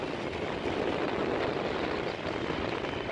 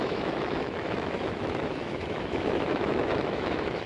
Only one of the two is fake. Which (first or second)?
second